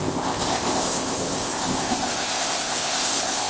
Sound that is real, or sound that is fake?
fake